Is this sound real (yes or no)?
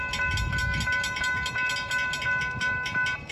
yes